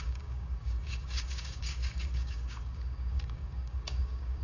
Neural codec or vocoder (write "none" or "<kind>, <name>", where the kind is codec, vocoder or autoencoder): codec, DAC